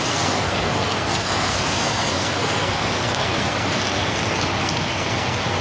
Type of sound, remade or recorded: remade